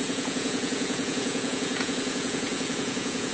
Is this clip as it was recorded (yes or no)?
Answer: no